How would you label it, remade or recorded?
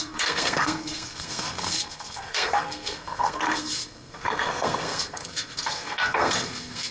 remade